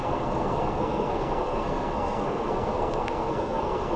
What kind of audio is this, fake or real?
fake